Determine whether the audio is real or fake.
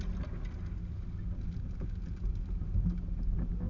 real